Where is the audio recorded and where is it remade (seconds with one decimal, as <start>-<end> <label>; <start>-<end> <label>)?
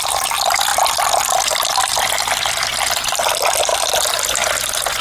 0.0-5.0 recorded